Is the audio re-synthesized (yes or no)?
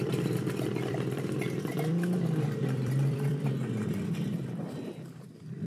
yes